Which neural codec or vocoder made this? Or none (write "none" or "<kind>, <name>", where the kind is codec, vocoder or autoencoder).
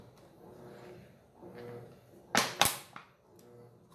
none